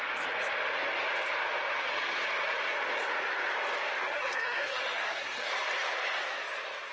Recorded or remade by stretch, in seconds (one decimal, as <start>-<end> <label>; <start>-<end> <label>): 0.0-4.0 recorded; 4.0-5.5 remade; 5.5-6.9 recorded